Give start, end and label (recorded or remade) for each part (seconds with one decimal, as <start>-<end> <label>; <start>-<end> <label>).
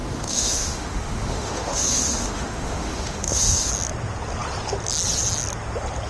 0.0-3.7 remade; 3.7-6.1 recorded